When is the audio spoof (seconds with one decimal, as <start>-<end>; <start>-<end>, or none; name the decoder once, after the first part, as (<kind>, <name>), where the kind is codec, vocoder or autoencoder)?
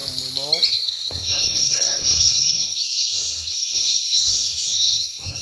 0.7-5.4 (codec, SNAC)